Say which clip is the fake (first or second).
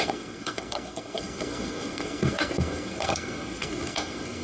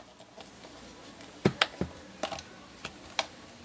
first